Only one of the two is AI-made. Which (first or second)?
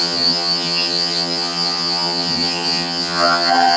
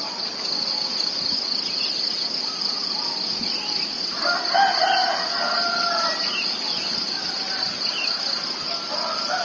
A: first